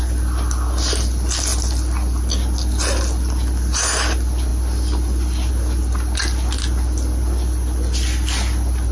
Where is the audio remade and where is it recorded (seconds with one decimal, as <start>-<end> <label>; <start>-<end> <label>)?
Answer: 0.0-8.9 recorded